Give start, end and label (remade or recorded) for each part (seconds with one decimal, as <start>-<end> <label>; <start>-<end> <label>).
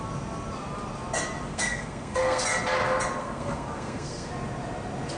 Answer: 0.0-1.5 recorded; 1.5-2.4 remade; 2.4-3.2 recorded; 3.2-4.3 remade; 4.3-5.2 recorded